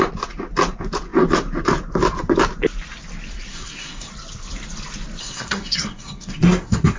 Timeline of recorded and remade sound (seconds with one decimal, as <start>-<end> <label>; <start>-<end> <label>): 0.0-3.5 recorded; 3.5-4.1 remade; 4.1-5.2 recorded; 5.2-7.0 remade